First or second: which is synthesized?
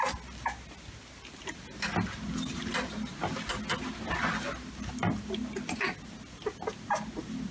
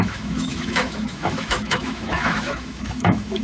second